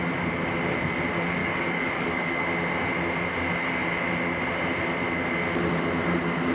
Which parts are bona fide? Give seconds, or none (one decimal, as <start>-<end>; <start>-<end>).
0.0-1.4; 2.4-6.5